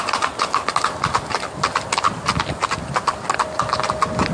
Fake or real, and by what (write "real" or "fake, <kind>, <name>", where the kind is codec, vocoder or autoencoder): real